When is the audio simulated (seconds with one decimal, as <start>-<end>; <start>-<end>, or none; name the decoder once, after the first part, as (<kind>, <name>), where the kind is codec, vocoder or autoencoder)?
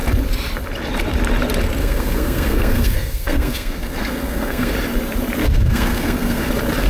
1.8-4.7 (codec, SNAC); 5.4-6.5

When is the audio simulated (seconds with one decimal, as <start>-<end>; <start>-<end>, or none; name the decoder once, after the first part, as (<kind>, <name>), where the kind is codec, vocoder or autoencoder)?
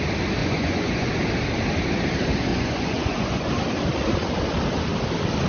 0.4-1.1 (vocoder, Vocos); 2.5-3.5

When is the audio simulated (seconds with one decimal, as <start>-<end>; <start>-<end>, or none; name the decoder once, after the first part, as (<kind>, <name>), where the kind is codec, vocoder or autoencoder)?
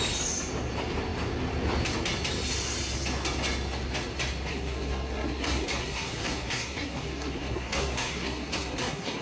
4.5-9.2 (codec, SNAC)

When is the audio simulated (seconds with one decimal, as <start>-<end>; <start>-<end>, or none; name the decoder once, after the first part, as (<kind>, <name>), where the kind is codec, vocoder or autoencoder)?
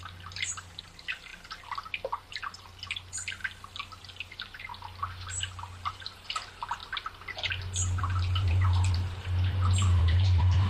0.0-1.3 (vocoder, BigVGAN v2); 2.3-3.4; 4.0-4.7; 5.3-6.8; 8.0-10.7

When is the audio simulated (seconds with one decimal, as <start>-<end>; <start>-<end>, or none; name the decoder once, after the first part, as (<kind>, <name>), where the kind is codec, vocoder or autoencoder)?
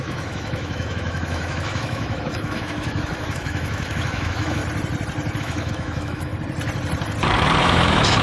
0.0-4.6 (autoencoder, DAC-VAE); 5.4-6.3; 7.6-8.2